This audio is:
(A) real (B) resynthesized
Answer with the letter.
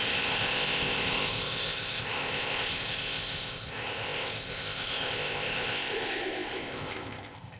B